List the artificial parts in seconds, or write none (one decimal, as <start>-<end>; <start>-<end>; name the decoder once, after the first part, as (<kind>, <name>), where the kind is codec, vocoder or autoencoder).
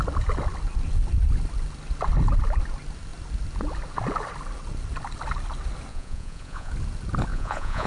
5.9-6.7 (vocoder, Vocos); 7.3-7.9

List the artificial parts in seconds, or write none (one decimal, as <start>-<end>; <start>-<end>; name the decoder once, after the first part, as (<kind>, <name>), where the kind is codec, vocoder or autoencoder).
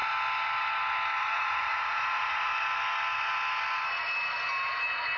1.2-2.5 (vocoder, Vocos)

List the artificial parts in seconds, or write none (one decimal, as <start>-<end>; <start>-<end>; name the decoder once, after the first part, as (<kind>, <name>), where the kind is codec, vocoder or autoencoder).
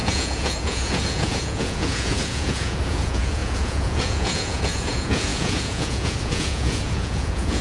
0.0-7.6 (vocoder, Vocos)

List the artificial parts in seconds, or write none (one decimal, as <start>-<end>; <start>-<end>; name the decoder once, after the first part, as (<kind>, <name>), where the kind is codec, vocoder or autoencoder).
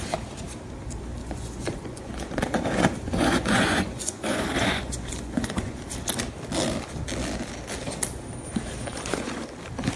1.2-5.8 (vocoder, Vocos); 8.9-9.4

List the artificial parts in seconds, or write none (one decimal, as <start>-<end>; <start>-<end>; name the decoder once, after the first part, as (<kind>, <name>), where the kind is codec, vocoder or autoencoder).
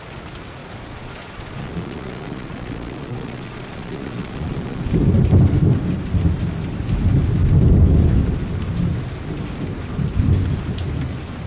0.6-4.8 (vocoder, Vocos)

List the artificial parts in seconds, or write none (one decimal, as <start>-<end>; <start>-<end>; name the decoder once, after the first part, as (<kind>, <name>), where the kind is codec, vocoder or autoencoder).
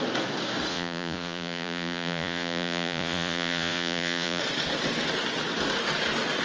0.7-4.4 (vocoder, Vocos)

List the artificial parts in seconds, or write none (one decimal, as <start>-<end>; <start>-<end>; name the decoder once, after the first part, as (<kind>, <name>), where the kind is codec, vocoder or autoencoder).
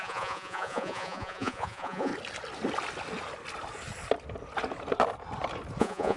0.0-2.1 (vocoder, Vocos); 5.8-6.2